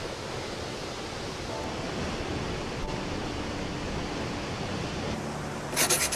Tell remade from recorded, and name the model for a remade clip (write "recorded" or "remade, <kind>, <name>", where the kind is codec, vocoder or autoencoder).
recorded